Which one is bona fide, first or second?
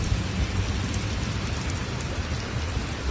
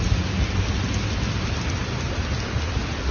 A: second